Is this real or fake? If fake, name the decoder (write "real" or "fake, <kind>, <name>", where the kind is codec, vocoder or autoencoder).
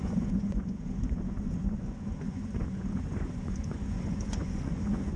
fake, vocoder, Vocos